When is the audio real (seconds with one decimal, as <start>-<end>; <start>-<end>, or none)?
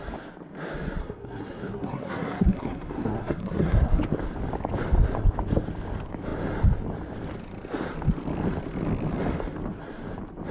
0.0-1.0; 4.0-10.5